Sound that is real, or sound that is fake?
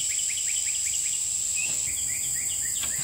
real